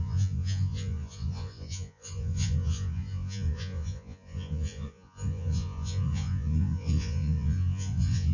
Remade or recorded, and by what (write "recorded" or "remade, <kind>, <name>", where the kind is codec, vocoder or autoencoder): remade, vocoder, Vocos